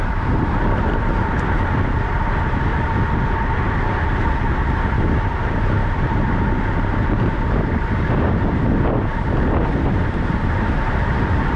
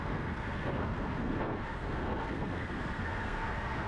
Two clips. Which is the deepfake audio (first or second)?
second